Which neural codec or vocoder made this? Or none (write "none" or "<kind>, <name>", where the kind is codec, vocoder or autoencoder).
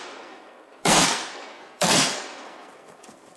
codec, SNAC